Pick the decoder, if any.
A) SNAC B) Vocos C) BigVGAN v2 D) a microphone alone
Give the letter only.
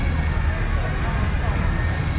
D